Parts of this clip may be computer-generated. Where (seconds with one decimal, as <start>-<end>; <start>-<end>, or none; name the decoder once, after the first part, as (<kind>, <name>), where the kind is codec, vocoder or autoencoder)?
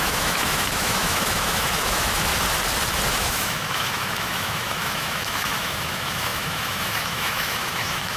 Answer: 0.0-2.3 (autoencoder, DAC-VAE); 3.1-8.2